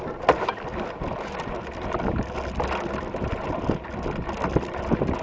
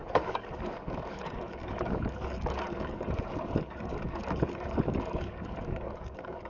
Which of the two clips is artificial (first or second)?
second